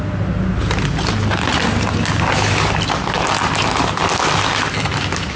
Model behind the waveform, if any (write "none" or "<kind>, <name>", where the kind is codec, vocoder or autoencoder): none